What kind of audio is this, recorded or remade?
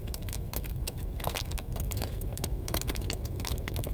remade